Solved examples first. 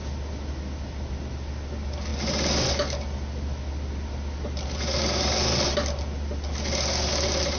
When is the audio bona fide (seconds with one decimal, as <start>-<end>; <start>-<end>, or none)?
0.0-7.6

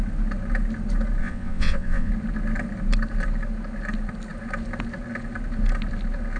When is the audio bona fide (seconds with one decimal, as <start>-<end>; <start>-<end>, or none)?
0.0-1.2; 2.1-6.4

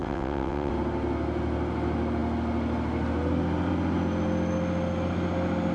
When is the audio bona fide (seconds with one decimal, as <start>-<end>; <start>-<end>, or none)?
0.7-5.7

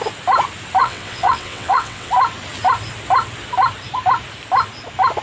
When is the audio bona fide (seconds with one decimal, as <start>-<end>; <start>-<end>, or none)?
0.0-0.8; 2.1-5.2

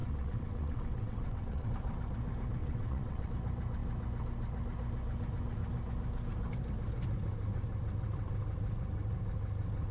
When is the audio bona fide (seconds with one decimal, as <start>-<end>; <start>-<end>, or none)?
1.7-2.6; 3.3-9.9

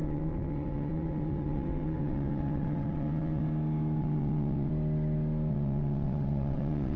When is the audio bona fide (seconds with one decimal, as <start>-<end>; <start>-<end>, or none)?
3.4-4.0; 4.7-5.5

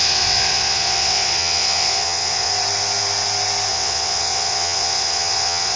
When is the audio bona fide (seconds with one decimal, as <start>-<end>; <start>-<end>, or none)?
2.5-3.7